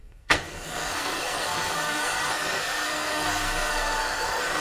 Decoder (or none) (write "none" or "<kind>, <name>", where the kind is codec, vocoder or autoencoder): codec, SNAC